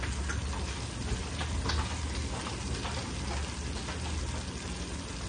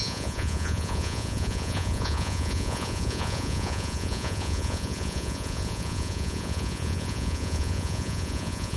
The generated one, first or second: second